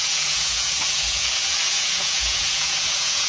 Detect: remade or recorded remade